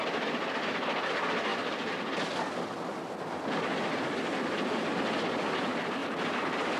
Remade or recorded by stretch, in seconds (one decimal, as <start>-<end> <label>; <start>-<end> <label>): 0.0-6.8 recorded

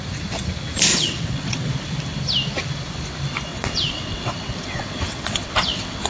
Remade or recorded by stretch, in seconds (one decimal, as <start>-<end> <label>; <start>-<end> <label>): 0.0-0.9 recorded; 0.9-1.7 remade; 1.7-3.5 recorded; 3.5-6.1 remade